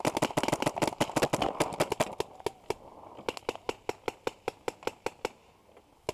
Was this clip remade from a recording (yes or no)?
no